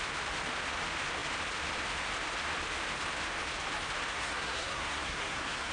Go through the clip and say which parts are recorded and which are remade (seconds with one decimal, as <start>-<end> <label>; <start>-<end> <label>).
0.0-4.1 recorded; 4.1-5.7 remade